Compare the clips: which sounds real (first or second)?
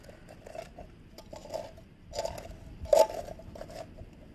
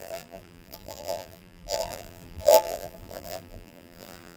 first